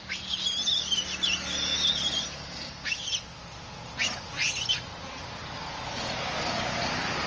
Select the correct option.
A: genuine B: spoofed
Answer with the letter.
A